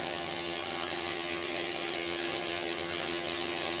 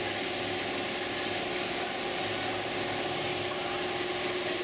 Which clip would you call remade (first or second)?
first